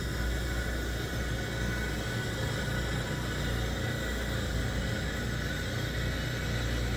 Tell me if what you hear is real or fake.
real